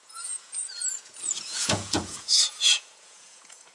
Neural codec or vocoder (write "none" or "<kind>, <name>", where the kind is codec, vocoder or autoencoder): vocoder, Vocos